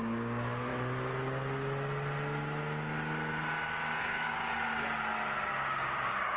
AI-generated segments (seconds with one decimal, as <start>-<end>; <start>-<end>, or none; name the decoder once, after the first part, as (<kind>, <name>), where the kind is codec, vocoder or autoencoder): 0.0-0.7 (codec, DAC); 4.0-4.4; 5.5-6.4